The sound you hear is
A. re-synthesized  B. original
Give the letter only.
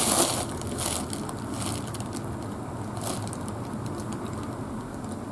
B